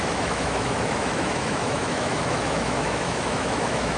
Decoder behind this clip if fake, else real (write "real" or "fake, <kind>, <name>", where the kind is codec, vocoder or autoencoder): fake, autoencoder, DAC-VAE